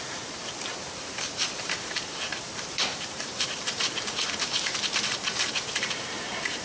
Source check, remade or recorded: remade